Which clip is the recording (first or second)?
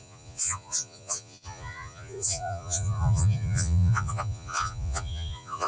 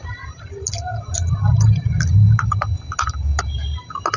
second